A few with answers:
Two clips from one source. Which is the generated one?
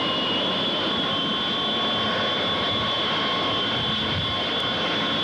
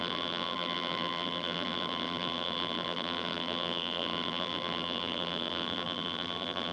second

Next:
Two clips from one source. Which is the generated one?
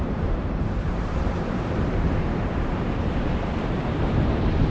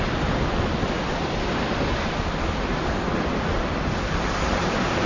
first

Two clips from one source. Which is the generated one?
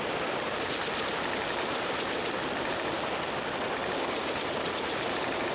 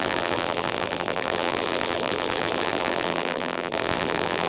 second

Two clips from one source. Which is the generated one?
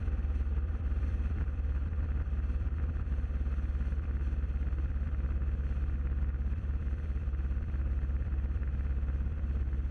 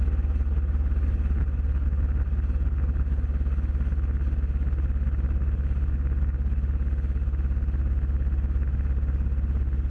first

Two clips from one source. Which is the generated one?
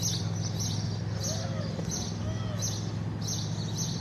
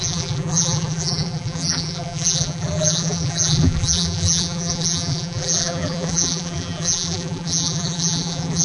second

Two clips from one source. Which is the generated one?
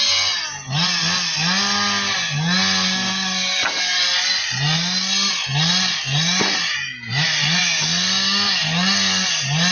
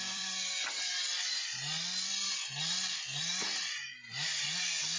second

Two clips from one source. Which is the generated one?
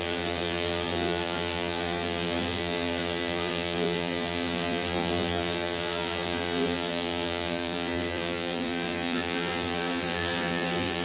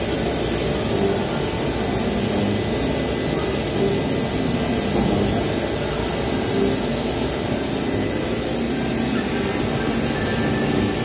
first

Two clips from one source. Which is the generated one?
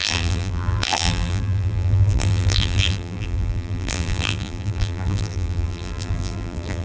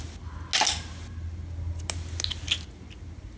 first